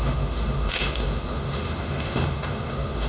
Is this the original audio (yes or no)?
no